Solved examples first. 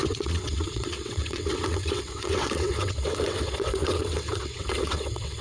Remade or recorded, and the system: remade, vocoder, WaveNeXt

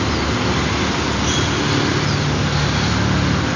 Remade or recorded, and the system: recorded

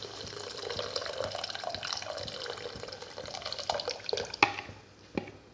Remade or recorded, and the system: recorded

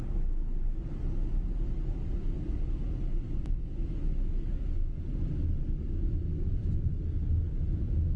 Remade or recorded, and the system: recorded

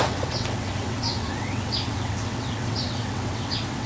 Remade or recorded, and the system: remade, vocoder, WaveNeXt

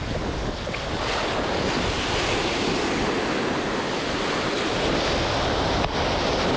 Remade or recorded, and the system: recorded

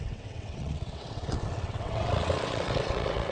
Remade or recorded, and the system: remade, vocoder, WaveNeXt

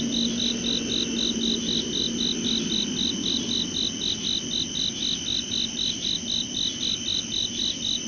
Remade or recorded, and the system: recorded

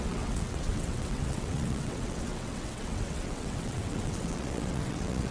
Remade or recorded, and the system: remade, vocoder, WaveNeXt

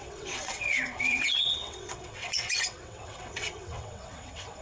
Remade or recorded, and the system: remade, vocoder, WaveNeXt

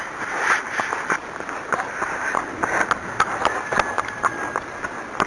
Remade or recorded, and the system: recorded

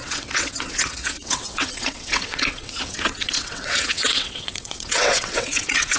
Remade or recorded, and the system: remade, vocoder, WaveNeXt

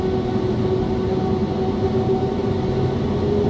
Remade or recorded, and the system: recorded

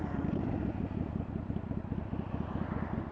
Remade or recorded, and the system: recorded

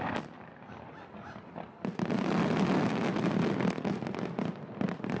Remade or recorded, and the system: recorded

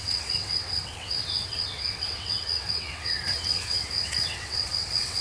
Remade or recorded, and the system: remade, vocoder, WaveNeXt